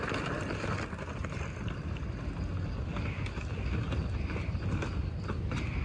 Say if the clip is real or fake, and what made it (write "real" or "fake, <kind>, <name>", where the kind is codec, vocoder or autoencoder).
real